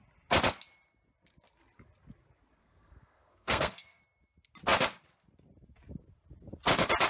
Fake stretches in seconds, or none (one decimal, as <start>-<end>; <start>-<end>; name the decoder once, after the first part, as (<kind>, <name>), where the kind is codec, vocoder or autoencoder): 2.6-4.0 (codec, SNAC)